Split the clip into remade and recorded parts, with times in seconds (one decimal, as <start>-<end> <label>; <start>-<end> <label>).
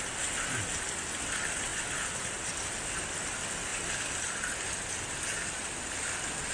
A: 0.0-6.5 recorded